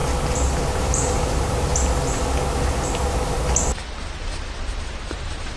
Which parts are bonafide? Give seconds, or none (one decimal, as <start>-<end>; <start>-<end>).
0.0-0.8; 1.7-4.2